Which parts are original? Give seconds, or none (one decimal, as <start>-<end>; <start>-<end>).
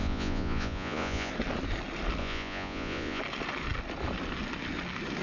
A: 1.3-2.2; 3.2-5.2